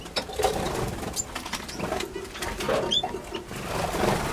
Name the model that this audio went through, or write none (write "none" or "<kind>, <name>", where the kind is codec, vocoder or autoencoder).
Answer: none